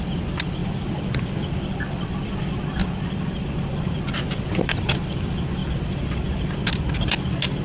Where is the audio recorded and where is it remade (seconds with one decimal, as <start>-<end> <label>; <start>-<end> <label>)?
0.0-7.6 recorded